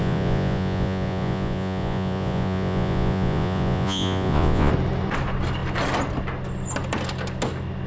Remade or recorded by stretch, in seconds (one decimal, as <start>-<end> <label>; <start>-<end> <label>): 0.0-4.7 remade; 4.7-7.9 recorded